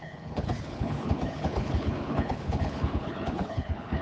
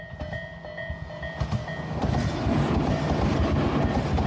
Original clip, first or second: second